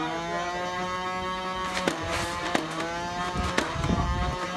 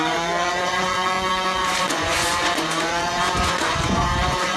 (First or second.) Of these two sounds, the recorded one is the first